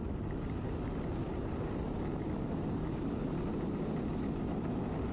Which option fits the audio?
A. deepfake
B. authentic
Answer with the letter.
B